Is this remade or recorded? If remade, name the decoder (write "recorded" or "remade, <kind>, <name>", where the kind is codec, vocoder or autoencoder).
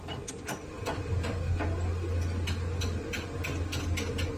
recorded